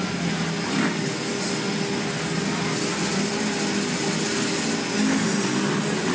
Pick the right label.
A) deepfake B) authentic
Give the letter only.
B